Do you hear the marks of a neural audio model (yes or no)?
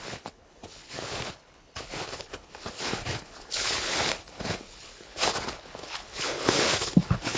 yes